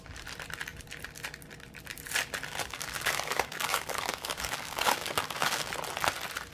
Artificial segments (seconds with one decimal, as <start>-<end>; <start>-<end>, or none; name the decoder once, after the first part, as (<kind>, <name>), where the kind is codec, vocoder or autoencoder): 2.5-5.7 (codec, DAC)

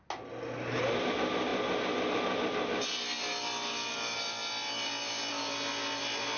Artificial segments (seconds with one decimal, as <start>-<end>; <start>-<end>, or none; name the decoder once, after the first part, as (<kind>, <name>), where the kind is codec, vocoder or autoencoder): none

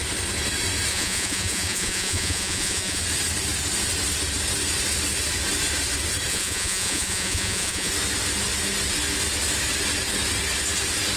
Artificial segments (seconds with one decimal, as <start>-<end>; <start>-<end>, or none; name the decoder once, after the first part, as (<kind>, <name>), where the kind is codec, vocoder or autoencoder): 0.9-3.0 (vocoder, Vocos); 6.3-7.9